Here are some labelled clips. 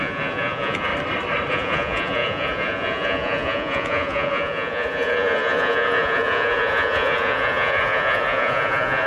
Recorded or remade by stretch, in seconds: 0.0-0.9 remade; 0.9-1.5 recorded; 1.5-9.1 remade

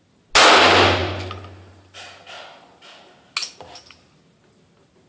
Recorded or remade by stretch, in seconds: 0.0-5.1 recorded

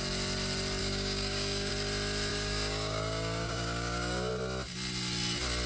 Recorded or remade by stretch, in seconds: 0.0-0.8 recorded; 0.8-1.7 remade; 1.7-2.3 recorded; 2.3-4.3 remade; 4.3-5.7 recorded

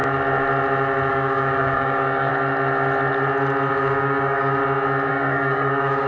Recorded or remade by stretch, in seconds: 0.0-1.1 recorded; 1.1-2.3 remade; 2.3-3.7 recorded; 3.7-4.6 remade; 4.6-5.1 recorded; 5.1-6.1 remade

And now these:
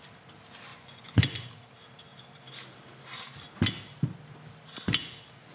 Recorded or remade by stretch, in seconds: 0.0-0.7 recorded; 0.7-1.5 remade; 1.5-5.5 recorded

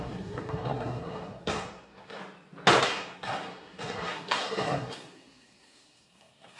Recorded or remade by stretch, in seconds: 0.0-2.2 remade; 2.2-2.8 recorded; 2.8-6.6 remade